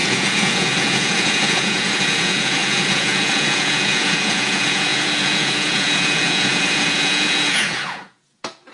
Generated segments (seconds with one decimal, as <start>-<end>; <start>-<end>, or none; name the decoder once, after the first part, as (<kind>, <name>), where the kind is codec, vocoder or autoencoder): 0.0-8.7 (vocoder, Vocos)